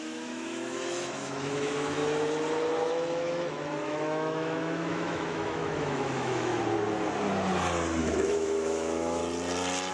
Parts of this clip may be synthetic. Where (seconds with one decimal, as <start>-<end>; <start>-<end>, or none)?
0.0-2.0; 2.9-6.5; 8.0-9.2